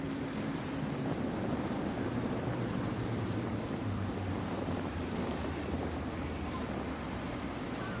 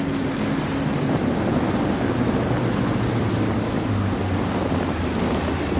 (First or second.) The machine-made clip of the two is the first